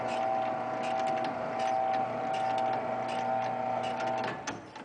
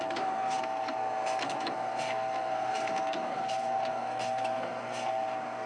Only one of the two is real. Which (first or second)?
first